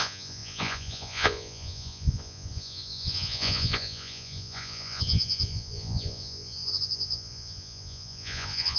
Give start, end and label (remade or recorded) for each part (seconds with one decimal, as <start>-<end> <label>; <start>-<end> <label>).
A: 0.0-8.8 remade